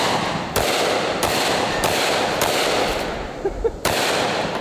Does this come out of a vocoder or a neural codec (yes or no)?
no